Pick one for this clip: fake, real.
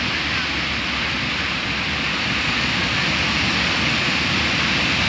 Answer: real